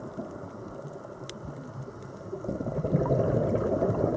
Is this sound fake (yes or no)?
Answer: no